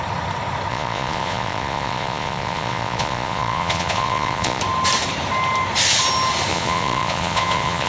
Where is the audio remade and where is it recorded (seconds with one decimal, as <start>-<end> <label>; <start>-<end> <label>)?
0.0-0.7 recorded; 0.7-4.6 remade; 4.6-6.5 recorded; 6.5-7.9 remade